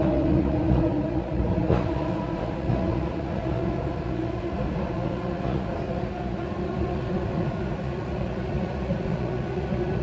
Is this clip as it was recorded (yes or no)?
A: no